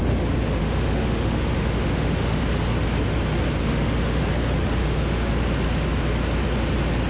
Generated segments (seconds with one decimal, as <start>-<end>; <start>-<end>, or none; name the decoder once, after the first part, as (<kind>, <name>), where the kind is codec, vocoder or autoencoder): 0.6-2.4 (autoencoder, DAC-VAE); 3.6-4.2; 4.8-5.3